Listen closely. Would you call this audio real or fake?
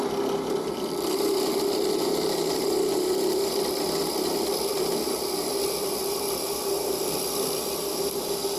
real